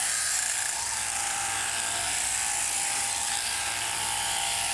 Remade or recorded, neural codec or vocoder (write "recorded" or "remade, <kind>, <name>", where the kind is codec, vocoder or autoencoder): remade, vocoder, BigVGAN v2